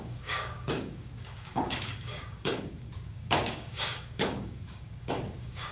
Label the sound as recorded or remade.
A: remade